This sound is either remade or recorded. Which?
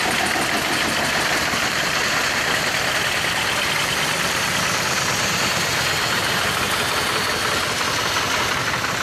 recorded